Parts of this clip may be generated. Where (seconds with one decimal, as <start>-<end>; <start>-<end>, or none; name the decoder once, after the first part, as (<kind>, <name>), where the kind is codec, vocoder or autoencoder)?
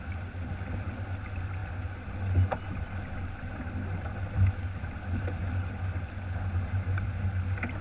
none